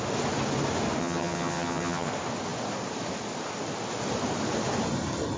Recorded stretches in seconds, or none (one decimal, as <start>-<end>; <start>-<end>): 0.0-1.0; 2.1-5.4

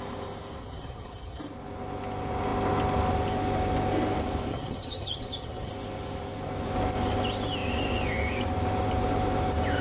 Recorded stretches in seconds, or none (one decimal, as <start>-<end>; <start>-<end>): 0.0-0.6; 1.4-4.5; 5.7-9.8